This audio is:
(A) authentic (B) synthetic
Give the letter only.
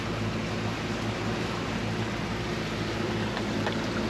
B